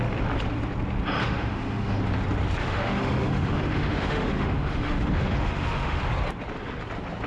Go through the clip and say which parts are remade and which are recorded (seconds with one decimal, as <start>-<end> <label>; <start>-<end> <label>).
0.0-1.2 recorded; 1.2-2.0 remade; 2.0-2.6 recorded; 2.6-6.0 remade; 6.0-7.3 recorded